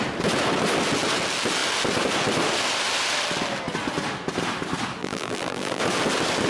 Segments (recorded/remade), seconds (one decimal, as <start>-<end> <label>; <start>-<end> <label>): 0.0-5.0 recorded; 5.0-5.8 remade; 5.8-6.5 recorded